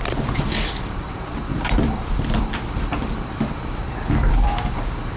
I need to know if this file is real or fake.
fake